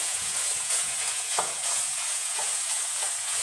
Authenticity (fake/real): fake